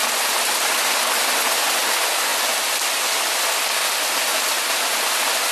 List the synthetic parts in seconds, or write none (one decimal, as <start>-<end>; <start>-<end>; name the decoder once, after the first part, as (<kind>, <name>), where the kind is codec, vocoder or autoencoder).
4.3-5.5 (vocoder, BigVGAN v2)